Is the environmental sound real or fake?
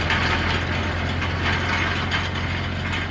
real